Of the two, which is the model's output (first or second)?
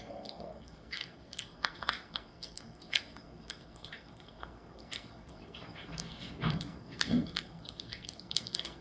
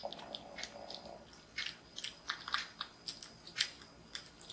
first